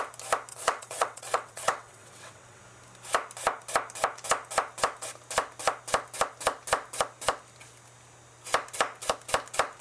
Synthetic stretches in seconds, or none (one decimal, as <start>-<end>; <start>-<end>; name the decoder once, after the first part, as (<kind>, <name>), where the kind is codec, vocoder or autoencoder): 0.5-2.6 (vocoder, WaveNeXt)